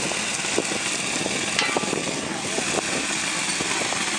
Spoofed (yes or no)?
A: no